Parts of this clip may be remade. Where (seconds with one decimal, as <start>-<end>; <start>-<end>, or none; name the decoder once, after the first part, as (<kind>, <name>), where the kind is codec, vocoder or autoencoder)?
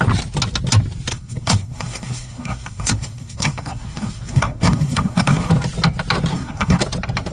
1.1-5.5 (codec, SNAC); 6.3-6.8